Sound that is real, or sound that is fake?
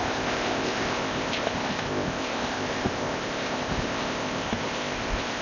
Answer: fake